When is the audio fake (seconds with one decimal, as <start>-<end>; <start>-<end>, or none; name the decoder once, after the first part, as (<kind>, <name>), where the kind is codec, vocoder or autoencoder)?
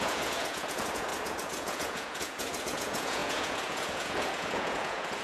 0.0-5.2 (vocoder, Vocos)